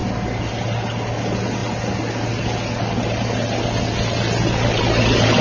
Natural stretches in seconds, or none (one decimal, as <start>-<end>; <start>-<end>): 0.0-5.4